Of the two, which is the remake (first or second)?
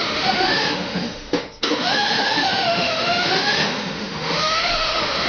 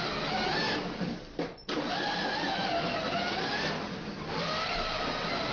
first